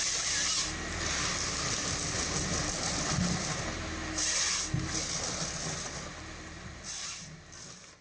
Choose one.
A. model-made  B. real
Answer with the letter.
B